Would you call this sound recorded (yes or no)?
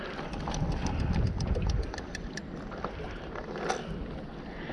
yes